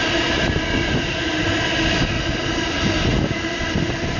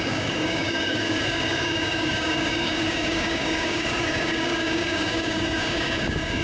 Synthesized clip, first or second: second